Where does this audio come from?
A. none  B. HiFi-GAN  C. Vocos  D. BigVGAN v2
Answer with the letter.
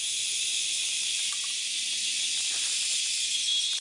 D